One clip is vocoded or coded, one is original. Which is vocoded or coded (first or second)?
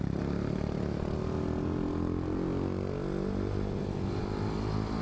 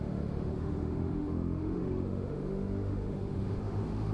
second